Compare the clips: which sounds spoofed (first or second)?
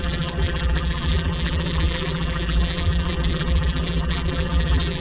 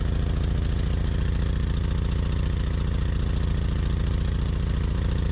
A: first